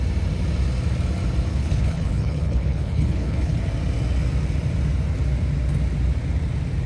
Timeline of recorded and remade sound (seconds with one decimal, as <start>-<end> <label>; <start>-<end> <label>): 0.0-1.5 recorded; 1.5-3.6 remade; 3.6-6.9 recorded